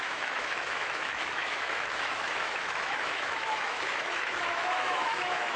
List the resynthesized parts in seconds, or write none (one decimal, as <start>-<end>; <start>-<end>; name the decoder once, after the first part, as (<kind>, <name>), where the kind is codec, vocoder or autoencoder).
0.0-5.6 (autoencoder, DAC-VAE)